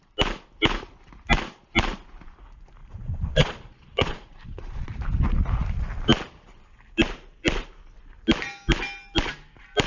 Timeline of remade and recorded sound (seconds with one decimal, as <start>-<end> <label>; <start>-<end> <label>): 0.0-2.8 recorded; 2.8-4.9 remade; 4.9-9.9 recorded